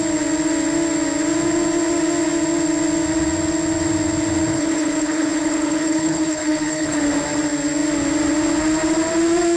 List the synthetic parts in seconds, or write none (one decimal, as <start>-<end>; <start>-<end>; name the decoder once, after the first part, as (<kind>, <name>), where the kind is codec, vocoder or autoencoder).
4.5-7.0 (codec, HILCodec)